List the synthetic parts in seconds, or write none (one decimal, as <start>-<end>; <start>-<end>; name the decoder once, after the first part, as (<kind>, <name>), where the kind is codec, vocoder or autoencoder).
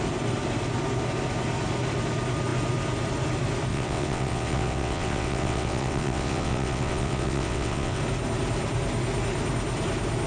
3.7-8.0 (vocoder, WaveNeXt)